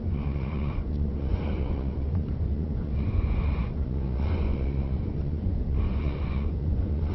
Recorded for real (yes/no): no